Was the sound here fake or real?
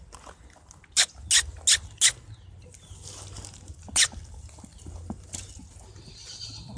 real